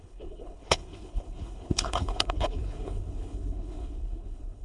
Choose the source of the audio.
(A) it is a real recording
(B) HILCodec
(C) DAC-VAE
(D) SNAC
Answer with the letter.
B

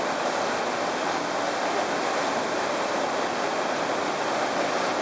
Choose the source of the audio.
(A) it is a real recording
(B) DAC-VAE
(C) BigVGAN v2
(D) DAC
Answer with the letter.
A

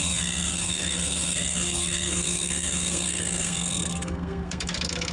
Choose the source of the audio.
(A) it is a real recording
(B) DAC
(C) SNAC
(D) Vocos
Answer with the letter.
C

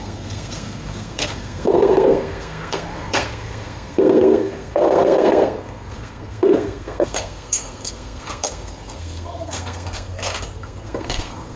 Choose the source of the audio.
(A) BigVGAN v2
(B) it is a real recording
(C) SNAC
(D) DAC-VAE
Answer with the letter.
C